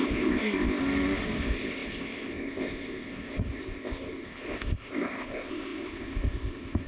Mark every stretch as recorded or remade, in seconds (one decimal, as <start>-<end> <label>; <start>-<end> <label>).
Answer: 0.0-0.8 remade; 0.8-1.4 recorded; 1.4-6.9 remade